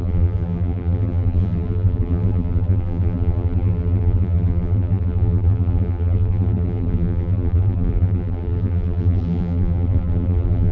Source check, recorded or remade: remade